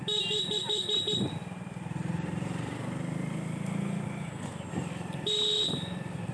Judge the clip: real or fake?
real